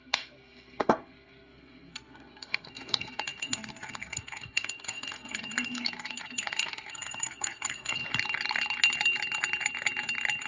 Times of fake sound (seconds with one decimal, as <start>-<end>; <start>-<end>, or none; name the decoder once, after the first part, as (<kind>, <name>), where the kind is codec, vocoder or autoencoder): 0.0-8.0 (codec, SNAC)